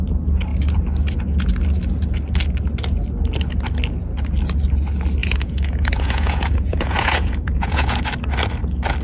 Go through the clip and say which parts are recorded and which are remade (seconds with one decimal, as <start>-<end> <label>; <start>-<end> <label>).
0.0-5.2 recorded; 5.2-8.0 remade; 8.0-9.0 recorded